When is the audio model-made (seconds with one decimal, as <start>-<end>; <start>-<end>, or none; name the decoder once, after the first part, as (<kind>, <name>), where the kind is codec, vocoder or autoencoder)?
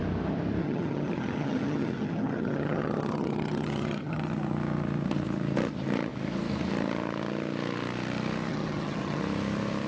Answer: 0.6-4.2 (vocoder, HiFi-GAN); 8.5-9.2